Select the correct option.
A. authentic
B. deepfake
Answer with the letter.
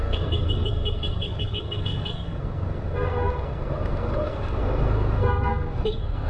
B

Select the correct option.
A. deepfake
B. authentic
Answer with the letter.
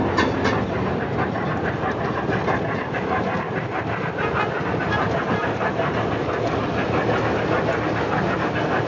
B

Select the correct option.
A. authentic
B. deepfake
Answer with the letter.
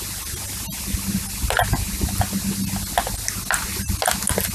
A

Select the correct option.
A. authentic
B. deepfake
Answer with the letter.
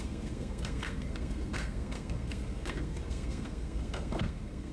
B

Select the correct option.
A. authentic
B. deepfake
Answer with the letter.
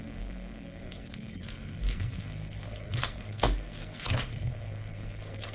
B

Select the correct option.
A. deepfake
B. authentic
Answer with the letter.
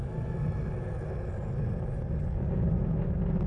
B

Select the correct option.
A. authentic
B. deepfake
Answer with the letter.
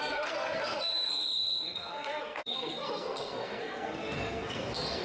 B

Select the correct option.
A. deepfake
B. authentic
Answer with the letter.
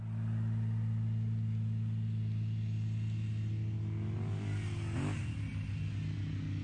B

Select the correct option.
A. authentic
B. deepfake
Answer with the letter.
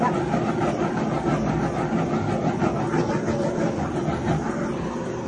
A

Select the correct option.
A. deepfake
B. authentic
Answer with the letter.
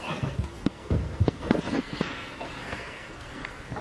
A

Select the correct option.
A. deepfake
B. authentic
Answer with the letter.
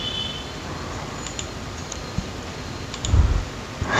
B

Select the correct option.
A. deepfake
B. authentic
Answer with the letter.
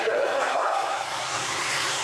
A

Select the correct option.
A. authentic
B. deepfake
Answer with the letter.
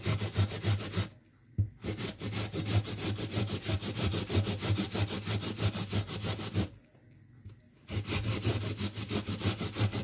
A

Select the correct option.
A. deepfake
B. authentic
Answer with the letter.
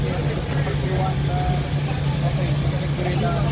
B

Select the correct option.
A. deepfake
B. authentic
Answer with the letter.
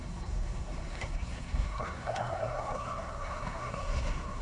A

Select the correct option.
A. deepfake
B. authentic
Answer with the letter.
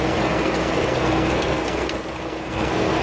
A